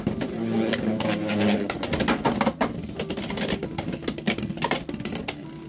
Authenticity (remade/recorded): recorded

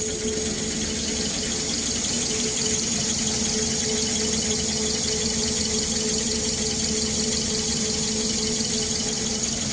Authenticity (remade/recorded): recorded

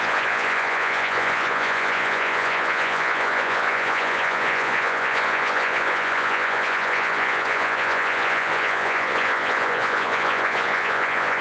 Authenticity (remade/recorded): remade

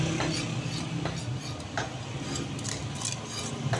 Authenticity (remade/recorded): recorded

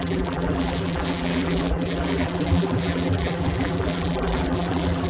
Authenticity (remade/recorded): remade